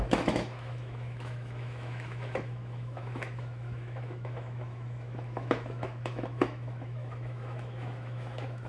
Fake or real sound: fake